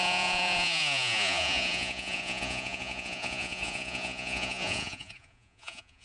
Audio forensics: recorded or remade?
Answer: remade